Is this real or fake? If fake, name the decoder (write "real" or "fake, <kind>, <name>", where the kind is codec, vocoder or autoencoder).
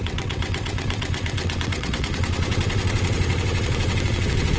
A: fake, vocoder, WaveNeXt